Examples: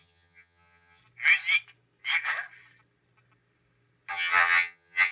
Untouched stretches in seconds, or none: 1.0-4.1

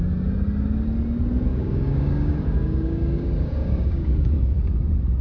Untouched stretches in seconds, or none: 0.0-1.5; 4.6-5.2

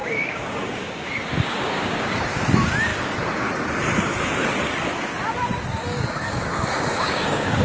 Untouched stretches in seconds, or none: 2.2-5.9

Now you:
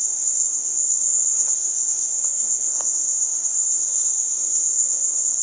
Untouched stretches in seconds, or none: none

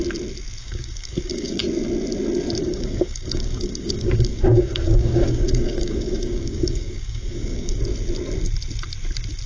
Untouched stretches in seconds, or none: 0.0-0.6; 1.6-2.6; 7.8-9.5

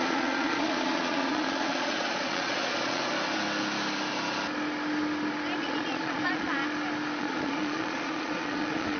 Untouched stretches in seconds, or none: 3.0-5.6; 6.6-7.2